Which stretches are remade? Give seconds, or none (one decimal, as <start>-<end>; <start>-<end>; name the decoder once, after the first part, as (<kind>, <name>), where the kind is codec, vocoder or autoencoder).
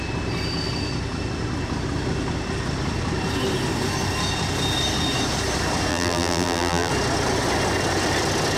5.9-6.9 (vocoder, BigVGAN v2)